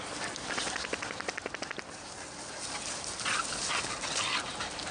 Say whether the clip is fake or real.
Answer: real